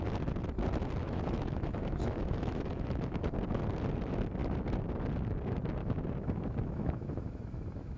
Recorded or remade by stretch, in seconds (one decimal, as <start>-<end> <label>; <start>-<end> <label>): 0.0-1.0 recorded; 1.0-3.3 remade; 3.3-5.8 recorded; 5.8-8.0 remade